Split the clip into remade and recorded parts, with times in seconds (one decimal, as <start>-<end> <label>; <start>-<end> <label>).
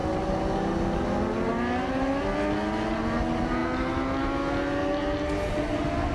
0.0-6.1 recorded